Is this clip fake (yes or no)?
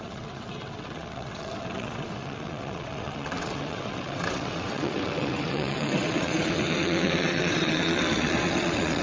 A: yes